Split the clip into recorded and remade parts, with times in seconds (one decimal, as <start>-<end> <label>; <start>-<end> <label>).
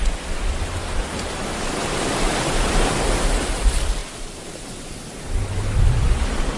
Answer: 0.0-0.8 recorded; 0.8-2.6 remade; 2.6-6.6 recorded